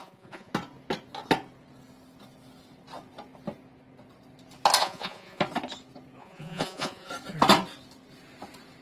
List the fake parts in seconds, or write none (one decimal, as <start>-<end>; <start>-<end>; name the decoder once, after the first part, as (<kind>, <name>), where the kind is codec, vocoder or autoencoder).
0.0-0.5 (vocoder, Vocos); 4.8-5.4; 6.2-7.1

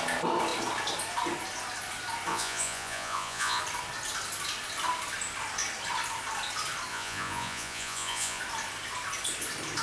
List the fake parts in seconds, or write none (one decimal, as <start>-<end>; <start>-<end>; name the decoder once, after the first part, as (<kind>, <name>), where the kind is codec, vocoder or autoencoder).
2.3-3.6 (vocoder, Vocos); 6.9-8.4

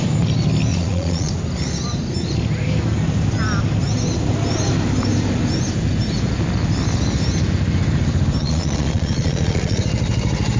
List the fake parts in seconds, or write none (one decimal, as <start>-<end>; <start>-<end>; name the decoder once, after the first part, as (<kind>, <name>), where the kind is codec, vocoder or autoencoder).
0.7-1.3 (vocoder, Vocos); 8.4-9.8

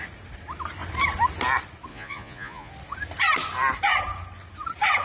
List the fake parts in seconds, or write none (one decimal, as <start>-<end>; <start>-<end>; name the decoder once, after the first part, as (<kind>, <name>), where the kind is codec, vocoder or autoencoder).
1.9-2.7 (vocoder, Vocos)

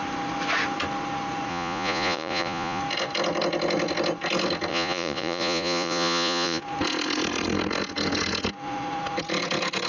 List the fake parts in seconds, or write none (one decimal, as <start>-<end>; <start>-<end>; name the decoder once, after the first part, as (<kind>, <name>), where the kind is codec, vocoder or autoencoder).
1.5-2.8 (vocoder, Vocos); 4.7-6.6